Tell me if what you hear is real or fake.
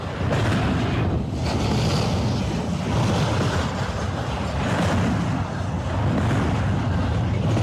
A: real